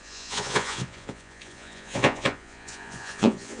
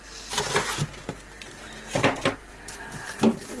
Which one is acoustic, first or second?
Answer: second